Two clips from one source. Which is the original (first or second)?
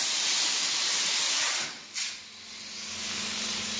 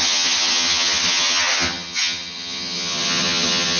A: first